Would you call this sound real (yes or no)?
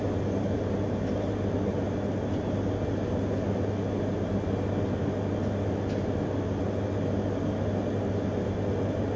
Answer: yes